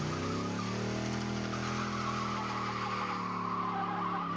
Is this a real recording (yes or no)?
yes